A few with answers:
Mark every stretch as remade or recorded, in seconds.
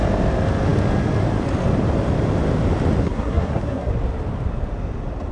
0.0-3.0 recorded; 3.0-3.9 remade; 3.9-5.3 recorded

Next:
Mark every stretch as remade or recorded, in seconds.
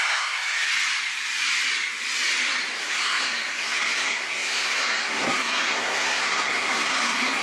0.0-0.7 remade; 0.7-2.8 recorded; 2.8-7.4 remade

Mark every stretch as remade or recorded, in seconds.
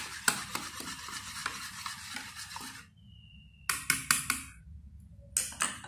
0.0-5.9 recorded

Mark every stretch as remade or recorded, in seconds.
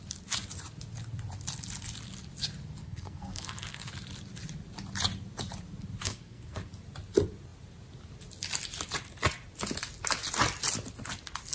0.0-2.8 recorded; 2.8-3.9 remade; 3.9-6.0 recorded; 6.0-6.7 remade; 6.7-11.5 recorded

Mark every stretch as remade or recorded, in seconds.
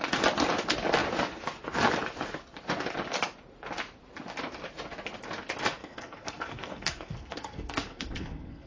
0.0-5.8 recorded; 5.8-8.7 remade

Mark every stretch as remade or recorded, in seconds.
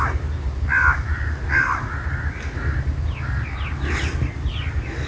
0.0-5.1 recorded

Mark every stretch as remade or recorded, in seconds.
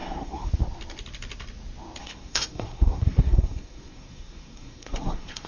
0.0-0.5 remade; 0.5-2.0 recorded; 2.0-5.5 remade